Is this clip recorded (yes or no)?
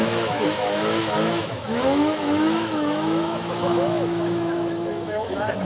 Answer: no